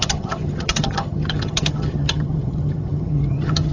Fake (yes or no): yes